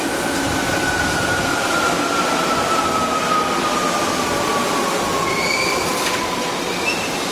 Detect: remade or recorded recorded